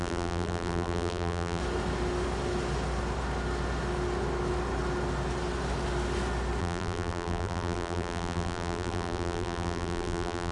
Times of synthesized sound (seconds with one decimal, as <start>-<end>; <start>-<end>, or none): 0.0-1.6; 6.6-10.5